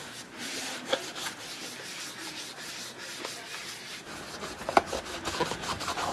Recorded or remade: recorded